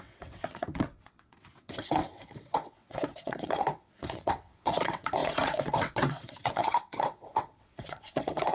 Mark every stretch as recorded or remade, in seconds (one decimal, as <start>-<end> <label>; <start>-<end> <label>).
0.0-8.5 remade